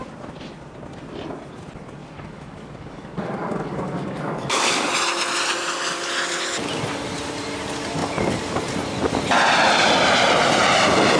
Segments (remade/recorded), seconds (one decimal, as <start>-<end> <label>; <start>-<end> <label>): 0.0-2.0 recorded; 2.0-4.9 remade; 4.9-11.2 recorded